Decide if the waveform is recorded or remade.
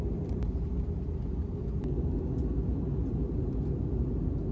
recorded